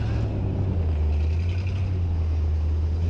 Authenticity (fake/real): real